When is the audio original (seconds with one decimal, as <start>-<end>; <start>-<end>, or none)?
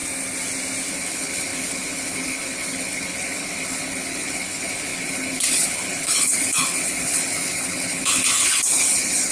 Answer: 0.0-0.9